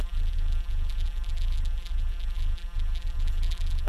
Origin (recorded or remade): remade